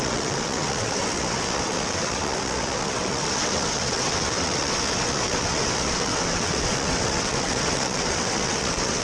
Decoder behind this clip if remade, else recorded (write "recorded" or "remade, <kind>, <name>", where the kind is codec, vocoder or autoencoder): remade, vocoder, WaveNeXt